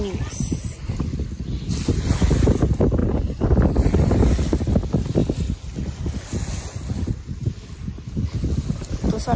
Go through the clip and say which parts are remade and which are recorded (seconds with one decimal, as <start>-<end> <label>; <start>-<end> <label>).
0.0-9.4 recorded